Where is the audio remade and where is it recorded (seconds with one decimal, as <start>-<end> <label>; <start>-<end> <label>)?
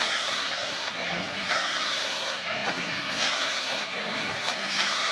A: 0.0-5.1 remade